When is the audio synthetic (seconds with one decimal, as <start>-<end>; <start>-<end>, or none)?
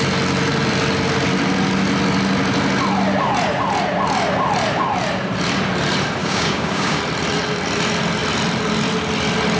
6.2-7.0